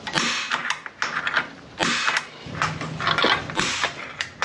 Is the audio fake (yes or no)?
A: no